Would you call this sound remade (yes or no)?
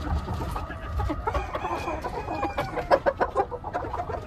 no